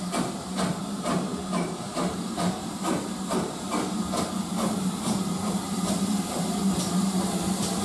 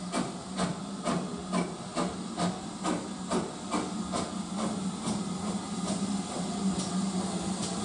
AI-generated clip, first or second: first